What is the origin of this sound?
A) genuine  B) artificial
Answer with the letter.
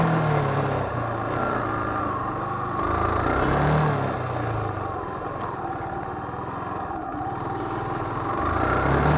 A